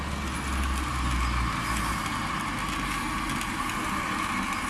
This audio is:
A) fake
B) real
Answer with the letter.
B